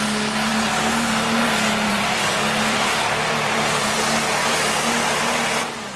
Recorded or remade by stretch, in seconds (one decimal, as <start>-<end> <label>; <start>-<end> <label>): 0.0-0.5 recorded; 0.5-4.1 remade; 4.1-6.0 recorded